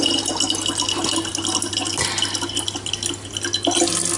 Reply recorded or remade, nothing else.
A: recorded